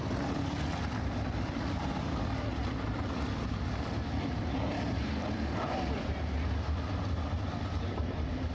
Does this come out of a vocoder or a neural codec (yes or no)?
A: yes